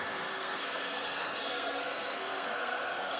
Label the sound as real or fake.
fake